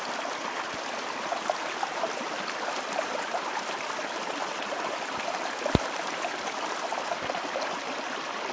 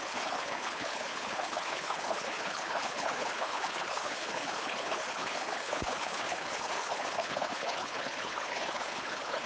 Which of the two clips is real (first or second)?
first